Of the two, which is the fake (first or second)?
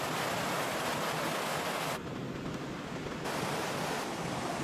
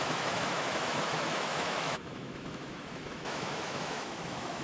second